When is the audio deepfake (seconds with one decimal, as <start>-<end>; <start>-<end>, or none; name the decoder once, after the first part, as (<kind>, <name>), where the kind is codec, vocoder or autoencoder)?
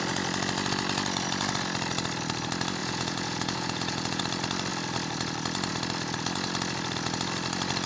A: 2.8-4.2 (vocoder, Vocos)